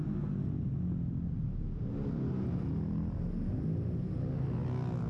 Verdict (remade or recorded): recorded